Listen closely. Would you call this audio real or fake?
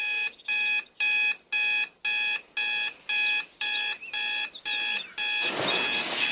real